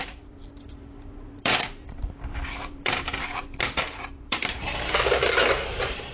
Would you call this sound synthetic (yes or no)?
yes